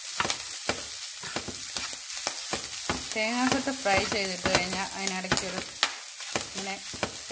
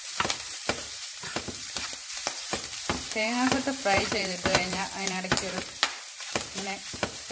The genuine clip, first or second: first